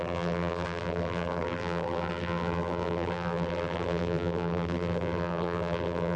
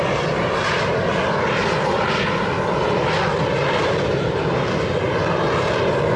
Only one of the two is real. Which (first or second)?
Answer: second